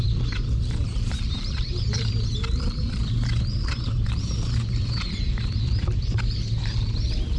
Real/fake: fake